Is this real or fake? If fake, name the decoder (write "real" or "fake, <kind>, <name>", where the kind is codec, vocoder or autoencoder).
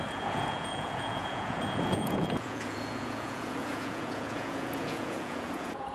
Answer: fake, vocoder, Vocos